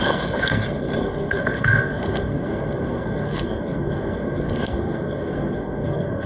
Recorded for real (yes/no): no